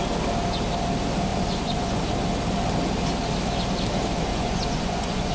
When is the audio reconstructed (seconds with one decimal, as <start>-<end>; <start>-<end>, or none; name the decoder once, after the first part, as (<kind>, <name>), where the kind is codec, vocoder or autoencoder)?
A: 1.3-2.0 (vocoder, Vocos); 4.3-5.3